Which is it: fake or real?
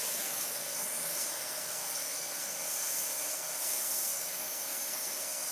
fake